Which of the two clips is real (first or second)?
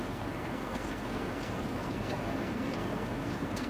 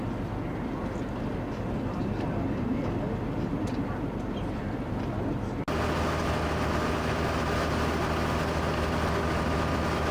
second